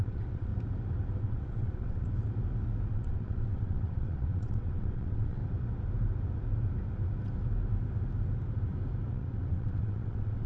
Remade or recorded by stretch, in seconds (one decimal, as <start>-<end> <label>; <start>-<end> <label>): 0.0-0.5 remade; 0.5-1.2 recorded; 1.2-2.1 remade; 2.1-2.9 recorded; 2.9-5.4 remade; 5.4-9.1 recorded; 9.1-10.5 remade